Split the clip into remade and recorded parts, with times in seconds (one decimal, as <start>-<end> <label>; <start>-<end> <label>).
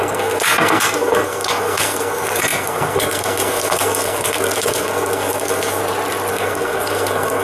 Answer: 0.0-5.8 remade; 5.8-6.3 recorded; 6.3-7.4 remade